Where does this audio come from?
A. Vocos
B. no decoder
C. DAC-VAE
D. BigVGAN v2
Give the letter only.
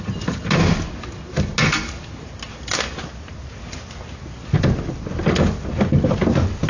B